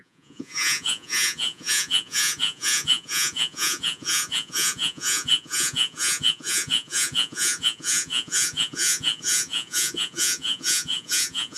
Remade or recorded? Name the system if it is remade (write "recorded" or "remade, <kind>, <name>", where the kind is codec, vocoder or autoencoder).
remade, vocoder, Vocos